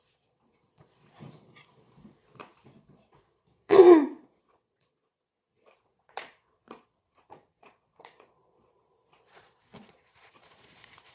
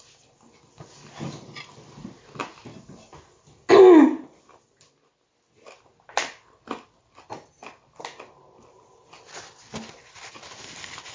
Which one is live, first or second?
second